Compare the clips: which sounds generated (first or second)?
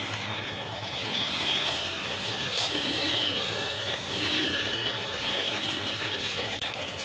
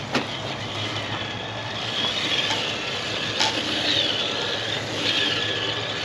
first